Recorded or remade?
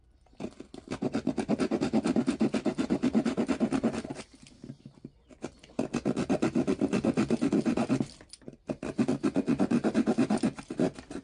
recorded